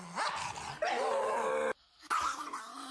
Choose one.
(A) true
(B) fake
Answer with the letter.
A